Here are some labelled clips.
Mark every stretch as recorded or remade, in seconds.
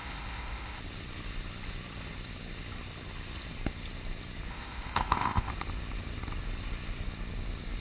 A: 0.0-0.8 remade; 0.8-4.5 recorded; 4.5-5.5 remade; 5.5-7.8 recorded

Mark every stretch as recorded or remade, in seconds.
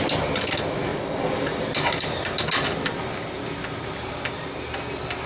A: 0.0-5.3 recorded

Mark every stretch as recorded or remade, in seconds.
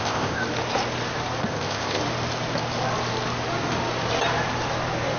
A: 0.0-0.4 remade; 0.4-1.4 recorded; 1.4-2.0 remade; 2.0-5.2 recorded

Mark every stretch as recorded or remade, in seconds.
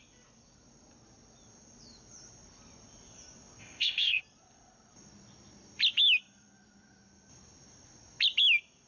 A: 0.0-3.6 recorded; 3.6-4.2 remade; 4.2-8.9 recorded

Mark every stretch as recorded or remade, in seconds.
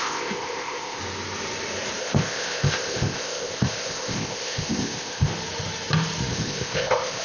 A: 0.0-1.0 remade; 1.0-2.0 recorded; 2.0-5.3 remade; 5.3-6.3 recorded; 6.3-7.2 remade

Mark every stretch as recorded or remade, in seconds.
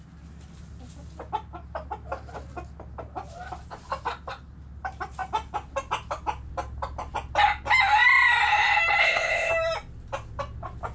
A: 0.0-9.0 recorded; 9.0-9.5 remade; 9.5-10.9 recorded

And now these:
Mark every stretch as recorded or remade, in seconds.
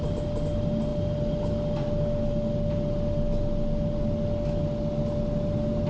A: 0.0-5.9 recorded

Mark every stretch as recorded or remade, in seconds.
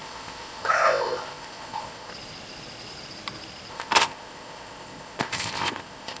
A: 0.0-2.1 remade; 2.1-3.7 recorded; 3.7-6.2 remade